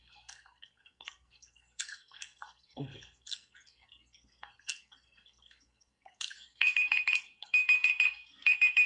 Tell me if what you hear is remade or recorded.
remade